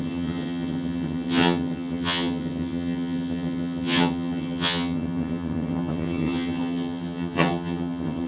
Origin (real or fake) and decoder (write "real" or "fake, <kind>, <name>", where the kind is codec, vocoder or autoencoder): fake, vocoder, HiFi-GAN